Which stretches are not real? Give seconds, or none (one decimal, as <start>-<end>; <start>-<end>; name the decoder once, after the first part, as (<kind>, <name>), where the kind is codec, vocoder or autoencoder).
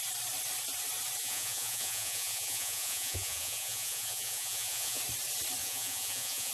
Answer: 1.2-5.0 (vocoder, Vocos); 5.6-6.5